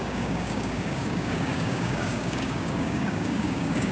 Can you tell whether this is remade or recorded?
remade